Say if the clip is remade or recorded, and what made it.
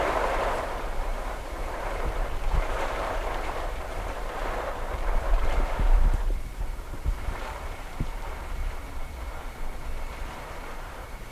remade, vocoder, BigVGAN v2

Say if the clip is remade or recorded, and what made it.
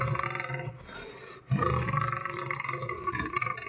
recorded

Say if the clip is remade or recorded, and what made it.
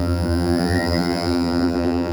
remade, vocoder, BigVGAN v2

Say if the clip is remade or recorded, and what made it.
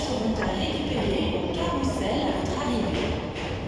remade, vocoder, BigVGAN v2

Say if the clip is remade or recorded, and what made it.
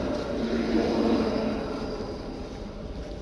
recorded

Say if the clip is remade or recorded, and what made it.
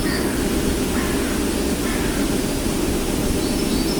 recorded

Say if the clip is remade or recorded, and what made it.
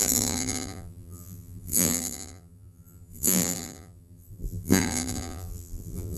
remade, vocoder, BigVGAN v2